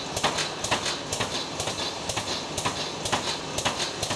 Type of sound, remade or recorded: recorded